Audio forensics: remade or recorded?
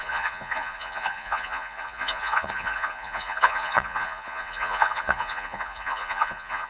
remade